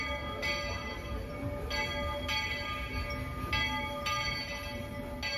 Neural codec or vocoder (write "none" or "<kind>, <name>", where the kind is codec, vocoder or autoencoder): none